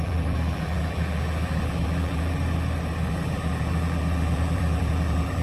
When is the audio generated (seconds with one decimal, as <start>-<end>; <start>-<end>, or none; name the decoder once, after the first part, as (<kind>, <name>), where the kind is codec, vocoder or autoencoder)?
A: 0.0-2.4 (vocoder, BigVGAN v2); 3.1-5.4